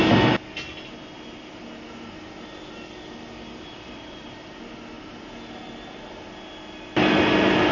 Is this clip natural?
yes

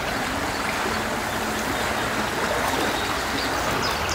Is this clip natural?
yes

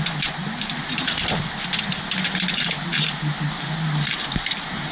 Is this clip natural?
yes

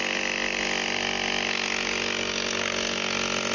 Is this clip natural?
yes